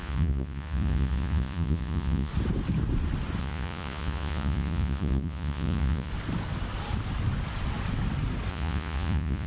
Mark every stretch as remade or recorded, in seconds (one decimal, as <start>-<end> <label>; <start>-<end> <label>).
0.0-2.3 remade; 2.3-3.4 recorded; 3.4-6.1 remade; 6.1-8.5 recorded; 8.5-9.5 remade